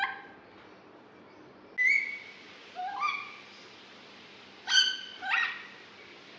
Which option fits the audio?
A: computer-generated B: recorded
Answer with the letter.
B